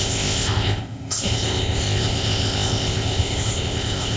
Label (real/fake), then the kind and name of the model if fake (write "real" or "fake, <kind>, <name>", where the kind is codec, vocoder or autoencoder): fake, codec, ZipCodec